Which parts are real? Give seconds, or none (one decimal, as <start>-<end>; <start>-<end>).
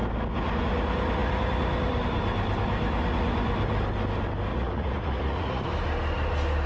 0.0-4.5; 5.6-6.7